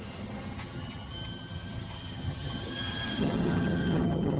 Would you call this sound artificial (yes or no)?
yes